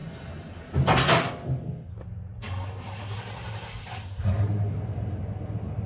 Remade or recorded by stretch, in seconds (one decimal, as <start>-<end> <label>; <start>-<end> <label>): 0.0-2.3 recorded; 2.3-3.2 remade; 3.2-5.9 recorded